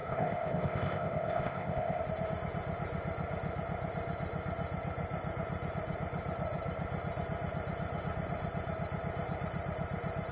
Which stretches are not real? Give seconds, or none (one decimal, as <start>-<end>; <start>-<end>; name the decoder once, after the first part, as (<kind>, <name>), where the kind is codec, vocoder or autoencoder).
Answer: 0.0-2.0 (codec, ZipCodec)